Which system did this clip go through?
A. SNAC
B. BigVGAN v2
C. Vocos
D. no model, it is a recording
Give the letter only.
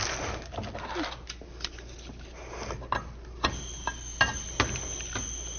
D